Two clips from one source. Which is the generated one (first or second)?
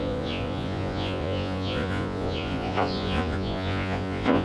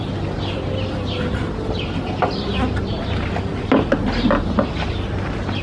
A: first